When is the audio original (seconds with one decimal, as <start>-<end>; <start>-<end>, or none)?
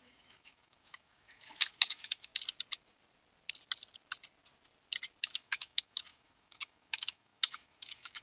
2.3-5.2